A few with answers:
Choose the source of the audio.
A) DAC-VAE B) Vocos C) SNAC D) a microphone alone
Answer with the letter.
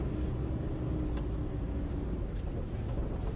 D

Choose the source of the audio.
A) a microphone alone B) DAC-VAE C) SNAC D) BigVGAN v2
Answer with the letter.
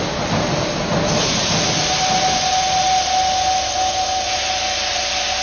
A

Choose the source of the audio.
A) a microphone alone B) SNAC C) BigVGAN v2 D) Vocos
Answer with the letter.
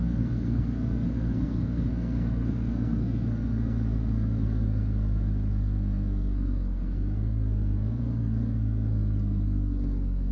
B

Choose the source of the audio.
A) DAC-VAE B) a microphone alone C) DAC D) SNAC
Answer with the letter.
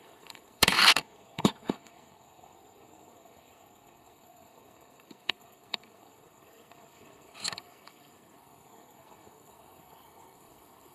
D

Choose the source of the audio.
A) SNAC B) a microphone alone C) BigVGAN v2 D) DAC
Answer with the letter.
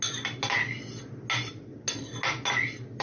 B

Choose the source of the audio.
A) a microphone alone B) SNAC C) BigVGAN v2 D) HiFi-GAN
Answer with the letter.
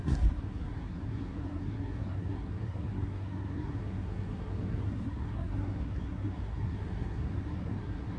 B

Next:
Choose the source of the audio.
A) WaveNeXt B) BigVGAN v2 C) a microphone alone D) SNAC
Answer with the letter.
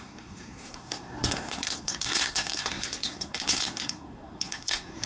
D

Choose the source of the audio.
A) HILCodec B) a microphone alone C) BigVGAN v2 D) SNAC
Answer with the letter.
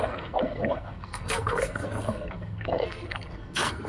D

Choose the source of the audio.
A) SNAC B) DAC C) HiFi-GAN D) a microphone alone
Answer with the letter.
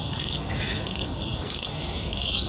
A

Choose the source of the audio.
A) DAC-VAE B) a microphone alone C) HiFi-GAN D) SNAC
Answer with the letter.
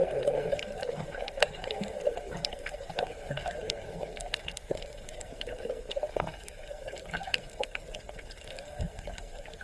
D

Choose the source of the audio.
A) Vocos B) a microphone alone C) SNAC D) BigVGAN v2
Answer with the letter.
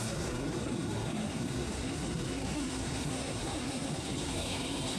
C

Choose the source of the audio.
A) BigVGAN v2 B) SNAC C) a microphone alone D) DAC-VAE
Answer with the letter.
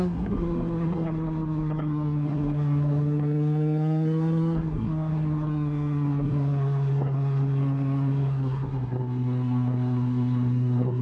B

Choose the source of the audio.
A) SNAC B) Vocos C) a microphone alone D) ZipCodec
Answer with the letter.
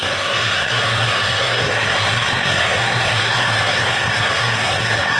A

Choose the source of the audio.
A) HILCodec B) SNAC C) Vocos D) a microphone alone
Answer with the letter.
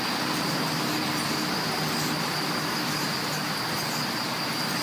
D